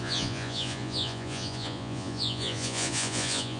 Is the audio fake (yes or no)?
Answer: yes